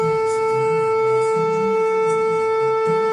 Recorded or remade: remade